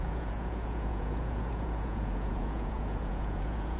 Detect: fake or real fake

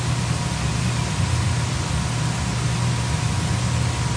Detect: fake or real real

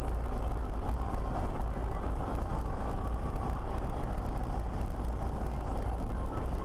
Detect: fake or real real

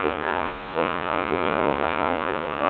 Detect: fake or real fake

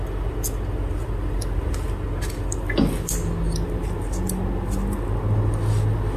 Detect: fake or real real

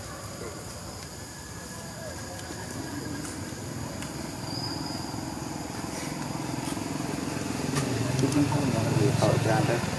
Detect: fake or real real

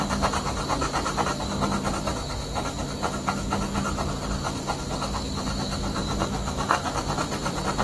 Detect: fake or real real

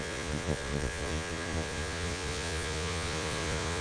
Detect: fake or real fake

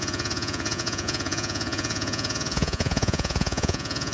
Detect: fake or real fake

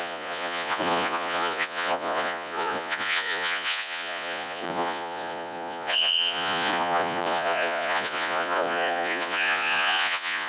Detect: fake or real fake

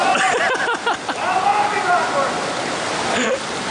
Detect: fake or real real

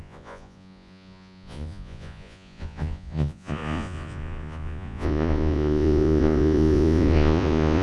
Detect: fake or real fake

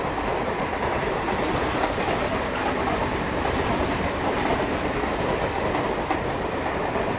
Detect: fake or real real